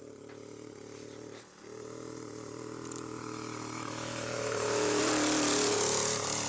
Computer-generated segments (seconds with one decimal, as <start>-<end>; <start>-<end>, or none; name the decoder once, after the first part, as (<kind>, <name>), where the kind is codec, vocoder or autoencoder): 3.2-5.0 (autoencoder, DAC-VAE)